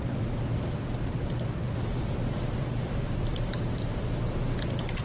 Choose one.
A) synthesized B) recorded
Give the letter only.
A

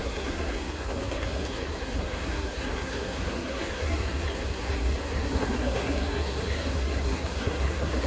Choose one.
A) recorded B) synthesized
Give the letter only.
B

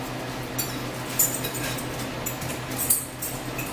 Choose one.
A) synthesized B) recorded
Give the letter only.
B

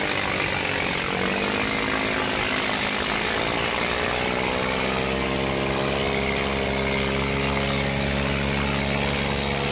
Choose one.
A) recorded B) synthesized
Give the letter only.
A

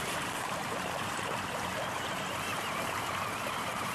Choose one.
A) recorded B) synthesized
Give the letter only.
B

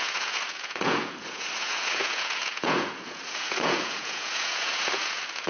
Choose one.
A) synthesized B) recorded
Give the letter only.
A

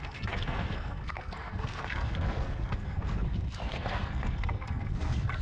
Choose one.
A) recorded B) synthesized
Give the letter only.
B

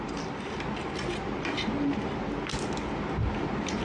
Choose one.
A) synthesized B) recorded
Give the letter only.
B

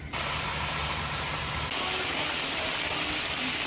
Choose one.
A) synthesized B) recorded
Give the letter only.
B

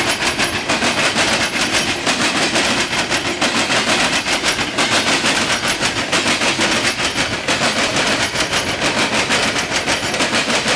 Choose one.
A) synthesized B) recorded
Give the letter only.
B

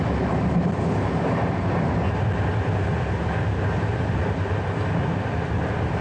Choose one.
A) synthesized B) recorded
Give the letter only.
B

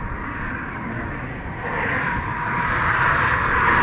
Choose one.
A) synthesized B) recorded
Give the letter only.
B